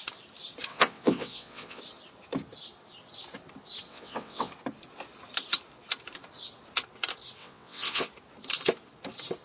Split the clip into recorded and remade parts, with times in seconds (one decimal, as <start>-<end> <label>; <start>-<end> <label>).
0.0-0.7 recorded; 0.7-1.8 remade; 1.8-3.9 recorded; 3.9-4.5 remade; 4.5-7.4 recorded; 7.4-8.1 remade; 8.1-9.4 recorded